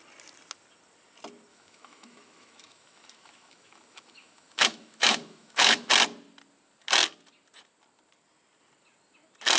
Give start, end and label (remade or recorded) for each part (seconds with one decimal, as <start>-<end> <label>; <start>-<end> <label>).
0.0-1.5 recorded; 1.5-5.9 remade; 5.9-9.6 recorded